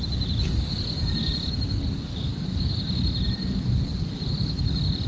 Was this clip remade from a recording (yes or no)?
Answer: no